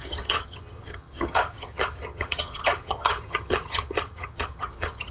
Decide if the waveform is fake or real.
fake